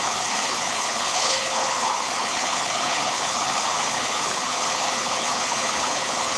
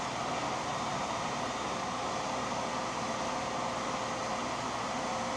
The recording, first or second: second